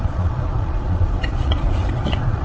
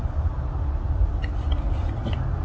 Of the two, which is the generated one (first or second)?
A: first